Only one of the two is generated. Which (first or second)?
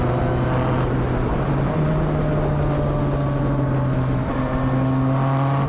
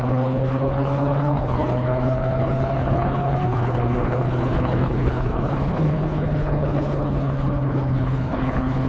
second